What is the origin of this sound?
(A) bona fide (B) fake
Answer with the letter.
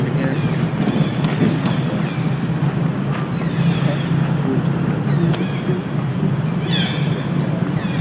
A